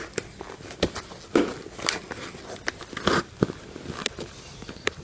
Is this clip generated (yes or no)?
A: no